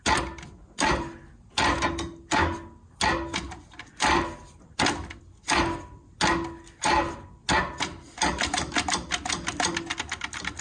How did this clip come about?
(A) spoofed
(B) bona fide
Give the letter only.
B